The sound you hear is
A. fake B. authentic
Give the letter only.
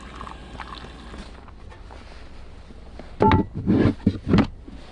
B